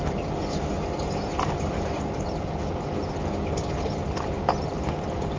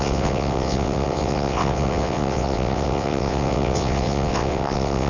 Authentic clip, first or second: first